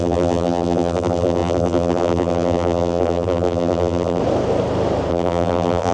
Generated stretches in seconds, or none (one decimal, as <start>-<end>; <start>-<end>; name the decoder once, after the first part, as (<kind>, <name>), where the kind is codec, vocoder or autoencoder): 0.0-4.2 (vocoder, BigVGAN v2); 5.1-5.9